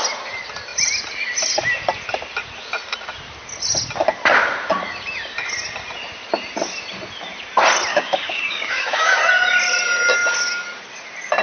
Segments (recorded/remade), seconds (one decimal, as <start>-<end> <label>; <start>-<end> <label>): 0.0-7.9 recorded; 7.9-9.2 remade; 9.2-11.4 recorded